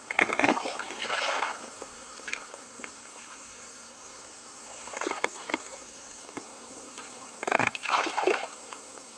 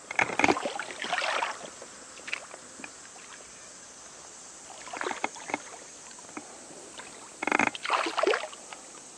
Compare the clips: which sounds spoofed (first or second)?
first